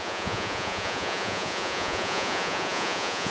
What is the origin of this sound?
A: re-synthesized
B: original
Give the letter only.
A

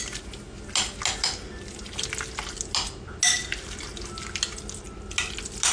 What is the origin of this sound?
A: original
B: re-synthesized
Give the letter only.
A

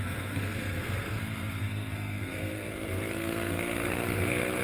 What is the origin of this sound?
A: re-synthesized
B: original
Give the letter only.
A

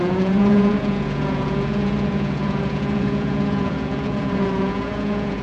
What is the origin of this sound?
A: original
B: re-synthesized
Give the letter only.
B